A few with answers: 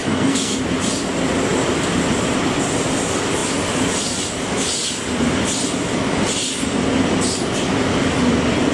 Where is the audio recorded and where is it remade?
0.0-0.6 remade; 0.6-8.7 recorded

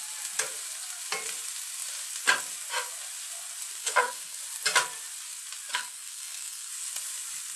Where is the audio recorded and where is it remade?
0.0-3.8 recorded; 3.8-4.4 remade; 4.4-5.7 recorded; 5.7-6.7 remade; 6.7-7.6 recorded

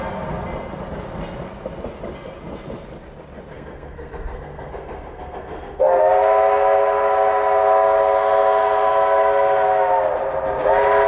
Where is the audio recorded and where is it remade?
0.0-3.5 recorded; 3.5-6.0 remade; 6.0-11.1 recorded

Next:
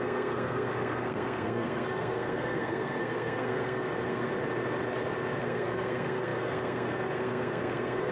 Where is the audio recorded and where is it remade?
0.0-4.3 remade; 4.3-5.4 recorded; 5.4-8.1 remade

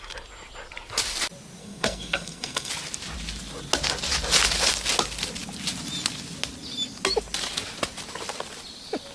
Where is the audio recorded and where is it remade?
0.0-1.6 recorded; 1.6-2.7 remade; 2.7-9.1 recorded

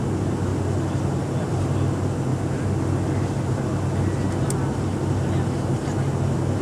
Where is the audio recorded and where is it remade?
0.0-6.6 recorded

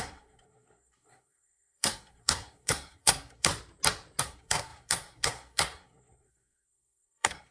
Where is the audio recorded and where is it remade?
0.0-3.5 remade; 3.5-4.2 recorded; 4.2-7.5 remade